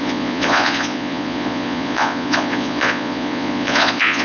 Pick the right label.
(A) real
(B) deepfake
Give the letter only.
B